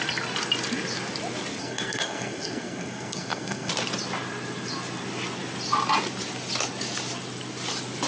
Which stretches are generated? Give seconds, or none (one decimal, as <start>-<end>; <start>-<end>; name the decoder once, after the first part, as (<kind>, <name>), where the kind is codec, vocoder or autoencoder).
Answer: 1.6-3.7 (codec, SNAC)